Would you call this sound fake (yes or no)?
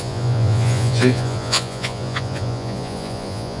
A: yes